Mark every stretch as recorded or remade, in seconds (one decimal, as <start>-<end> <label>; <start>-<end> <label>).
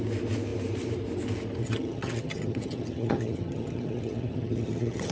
0.0-1.6 recorded; 1.6-5.1 remade